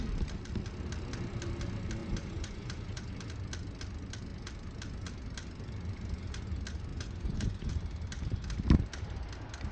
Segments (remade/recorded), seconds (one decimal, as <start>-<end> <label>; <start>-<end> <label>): 0.0-2.0 recorded; 2.0-3.1 remade; 3.1-6.9 recorded; 6.9-7.7 remade; 7.7-9.7 recorded